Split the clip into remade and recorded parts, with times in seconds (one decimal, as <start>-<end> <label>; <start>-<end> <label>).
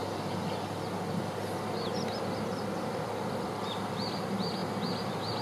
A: 0.0-5.4 recorded